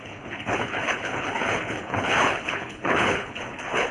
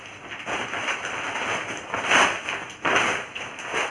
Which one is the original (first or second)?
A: second